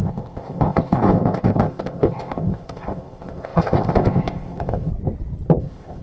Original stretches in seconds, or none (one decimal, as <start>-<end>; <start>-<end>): 4.9-5.6